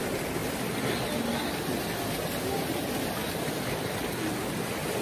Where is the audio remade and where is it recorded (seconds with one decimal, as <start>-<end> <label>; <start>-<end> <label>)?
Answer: 0.0-5.0 recorded